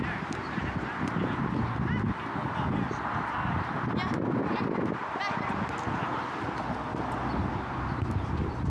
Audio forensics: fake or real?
real